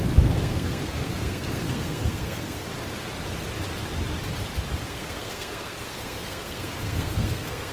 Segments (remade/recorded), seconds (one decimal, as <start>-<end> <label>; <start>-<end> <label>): 0.0-2.7 remade; 2.7-4.8 recorded; 4.8-7.7 remade